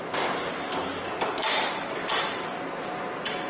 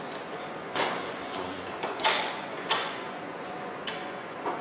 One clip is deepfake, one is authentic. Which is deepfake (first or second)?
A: second